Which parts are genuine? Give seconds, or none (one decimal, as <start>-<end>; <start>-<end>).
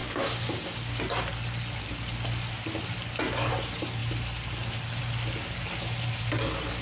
1.0-6.8